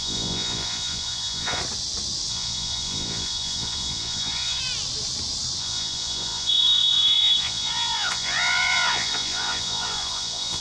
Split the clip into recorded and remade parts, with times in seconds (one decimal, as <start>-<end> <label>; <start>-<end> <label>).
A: 0.0-1.6 remade; 1.6-2.3 recorded; 2.3-4.6 remade; 4.6-5.6 recorded; 5.6-10.6 remade